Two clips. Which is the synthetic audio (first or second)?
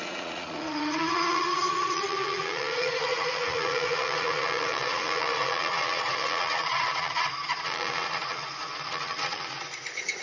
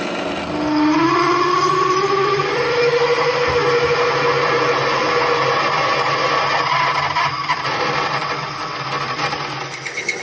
first